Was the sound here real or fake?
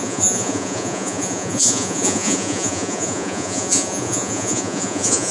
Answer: fake